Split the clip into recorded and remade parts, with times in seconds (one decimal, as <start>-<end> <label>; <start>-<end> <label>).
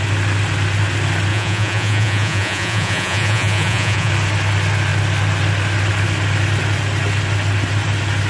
0.0-1.3 recorded; 1.3-4.1 remade; 4.1-8.3 recorded